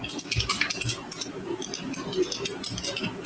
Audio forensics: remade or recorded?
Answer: recorded